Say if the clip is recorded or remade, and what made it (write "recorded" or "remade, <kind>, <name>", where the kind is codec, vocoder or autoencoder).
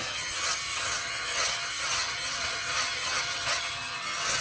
remade, vocoder, HiFi-GAN